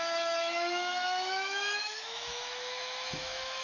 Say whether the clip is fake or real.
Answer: fake